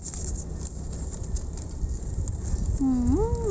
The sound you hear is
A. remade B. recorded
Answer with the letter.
B